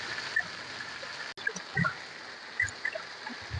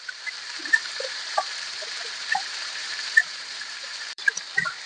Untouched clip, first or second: first